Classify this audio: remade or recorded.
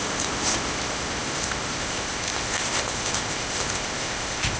remade